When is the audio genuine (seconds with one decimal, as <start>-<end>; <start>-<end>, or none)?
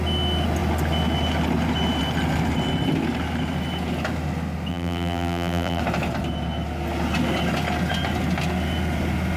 0.0-4.7; 5.8-9.4